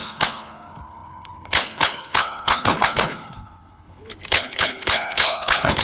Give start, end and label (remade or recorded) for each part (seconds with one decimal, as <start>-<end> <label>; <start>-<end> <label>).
0.0-5.8 remade